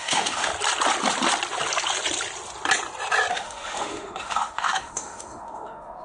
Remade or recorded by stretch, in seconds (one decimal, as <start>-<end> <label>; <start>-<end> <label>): 0.0-0.5 remade; 0.5-3.3 recorded; 3.3-6.0 remade